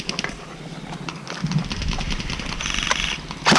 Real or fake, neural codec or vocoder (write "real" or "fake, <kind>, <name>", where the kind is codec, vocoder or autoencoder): real